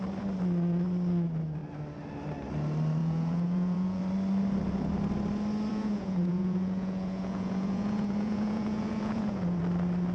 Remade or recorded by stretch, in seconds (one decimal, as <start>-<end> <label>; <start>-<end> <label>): 0.0-3.0 recorded; 3.0-4.0 remade; 4.0-5.7 recorded; 5.7-9.6 remade; 9.6-10.1 recorded